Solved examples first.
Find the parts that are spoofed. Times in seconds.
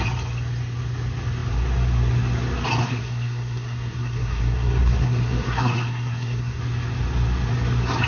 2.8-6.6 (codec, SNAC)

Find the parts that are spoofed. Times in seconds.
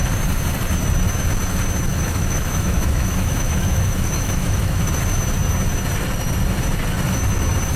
1.9-4.9 (autoencoder, DAC-VAE)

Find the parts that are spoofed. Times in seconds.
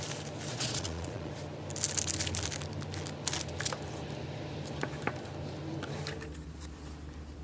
0.5-1.3 (vocoder, Vocos)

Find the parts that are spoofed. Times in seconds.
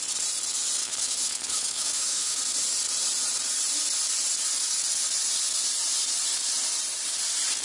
0.8-2.4 (autoencoder, DAC-VAE)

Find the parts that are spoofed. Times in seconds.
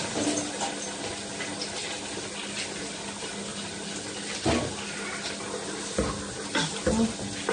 none